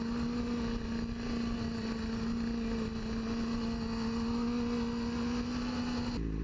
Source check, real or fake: real